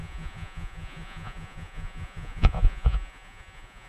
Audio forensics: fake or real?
fake